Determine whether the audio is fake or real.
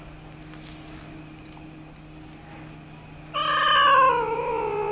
real